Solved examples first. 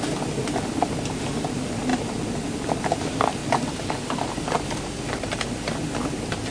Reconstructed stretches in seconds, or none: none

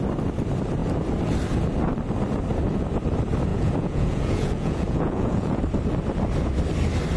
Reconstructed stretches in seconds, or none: 3.5-5.6 (vocoder, Vocos)

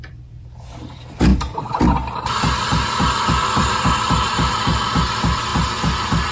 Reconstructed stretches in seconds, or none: 0.0-5.5 (vocoder, BigVGAN v2)

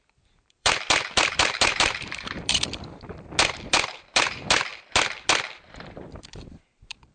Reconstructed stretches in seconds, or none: 0.0-3.1 (vocoder, BigVGAN v2); 3.7-4.7; 6.2-7.1

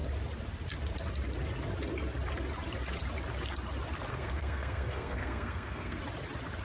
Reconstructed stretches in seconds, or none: 4.1-6.0 (codec, SNAC)

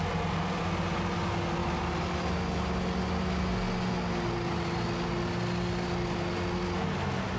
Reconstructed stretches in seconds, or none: none